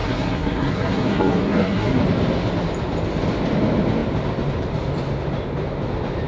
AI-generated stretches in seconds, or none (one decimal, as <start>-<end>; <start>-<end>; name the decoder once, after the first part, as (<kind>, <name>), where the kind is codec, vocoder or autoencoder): 0.0-2.0 (codec, SNAC)